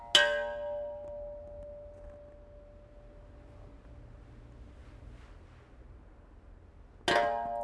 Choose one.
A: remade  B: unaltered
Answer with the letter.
B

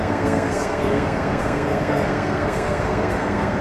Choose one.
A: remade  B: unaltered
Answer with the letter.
A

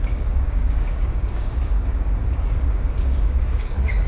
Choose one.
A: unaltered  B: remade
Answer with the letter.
B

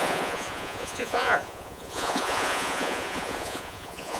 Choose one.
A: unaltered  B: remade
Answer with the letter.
B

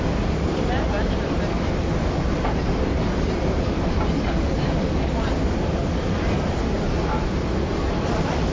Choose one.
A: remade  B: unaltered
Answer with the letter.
B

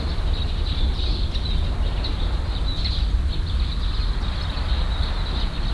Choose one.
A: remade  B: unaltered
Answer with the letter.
B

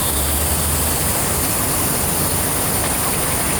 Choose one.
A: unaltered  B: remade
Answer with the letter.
A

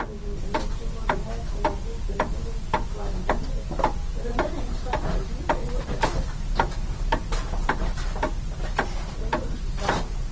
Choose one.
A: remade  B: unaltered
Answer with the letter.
B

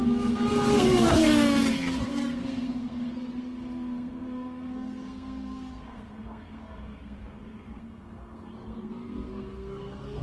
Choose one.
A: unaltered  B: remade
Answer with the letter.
B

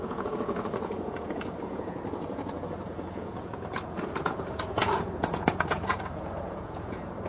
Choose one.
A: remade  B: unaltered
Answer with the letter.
A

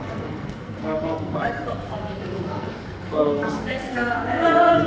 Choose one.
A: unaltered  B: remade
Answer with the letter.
B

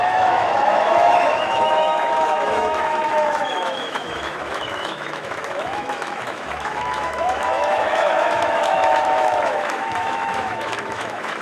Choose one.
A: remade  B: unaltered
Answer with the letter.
A